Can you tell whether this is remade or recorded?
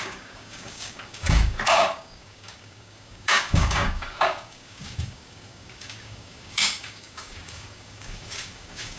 remade